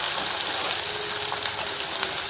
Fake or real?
real